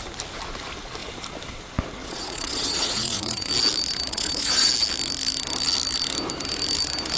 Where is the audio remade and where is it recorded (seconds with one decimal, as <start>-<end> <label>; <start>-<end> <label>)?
0.0-2.0 recorded; 2.0-3.5 remade; 3.5-4.1 recorded; 4.1-4.7 remade; 4.7-7.2 recorded